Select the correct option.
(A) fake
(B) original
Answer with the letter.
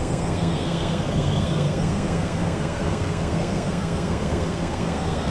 A